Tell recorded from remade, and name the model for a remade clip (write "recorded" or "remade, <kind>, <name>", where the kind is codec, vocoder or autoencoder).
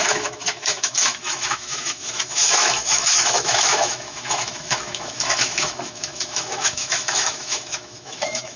remade, autoencoder, DAC-VAE